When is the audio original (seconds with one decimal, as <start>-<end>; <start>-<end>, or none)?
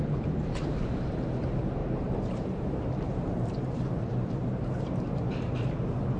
0.0-1.8; 5.5-6.2